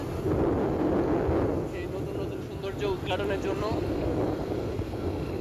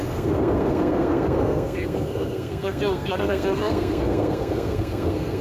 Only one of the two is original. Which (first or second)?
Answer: first